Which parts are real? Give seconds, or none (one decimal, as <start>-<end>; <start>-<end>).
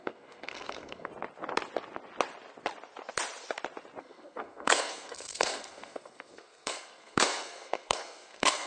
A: 1.1-4.0